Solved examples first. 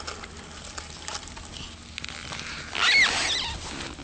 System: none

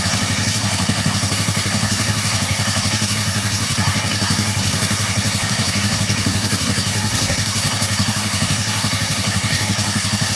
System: codec, SNAC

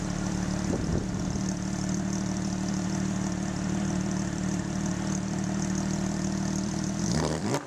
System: vocoder, BigVGAN v2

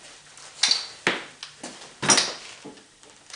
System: none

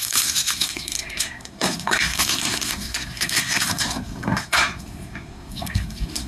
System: codec, SNAC